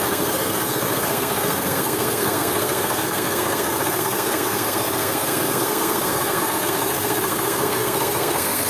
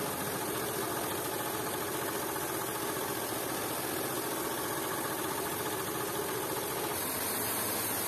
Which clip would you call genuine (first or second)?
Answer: second